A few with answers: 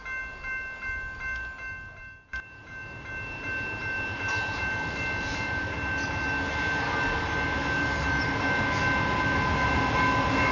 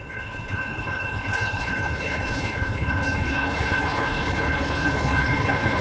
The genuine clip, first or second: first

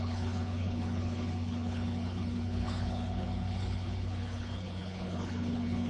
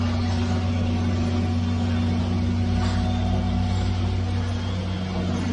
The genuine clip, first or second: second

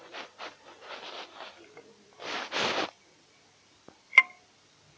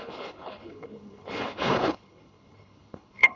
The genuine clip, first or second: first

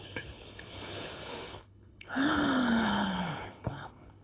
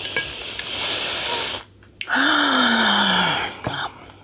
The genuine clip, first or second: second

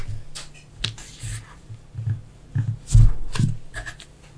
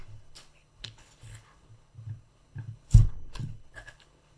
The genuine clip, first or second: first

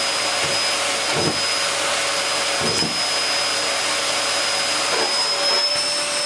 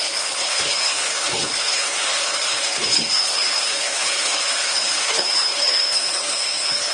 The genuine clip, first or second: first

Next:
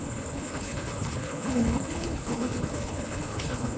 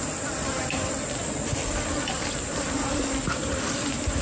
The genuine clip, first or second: second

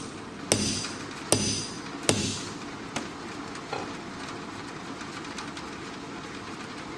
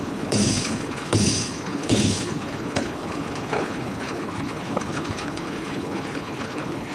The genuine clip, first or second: first